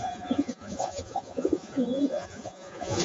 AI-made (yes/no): yes